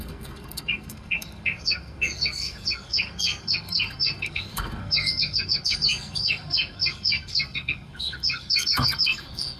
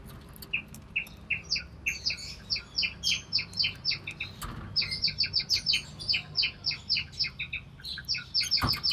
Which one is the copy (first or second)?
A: first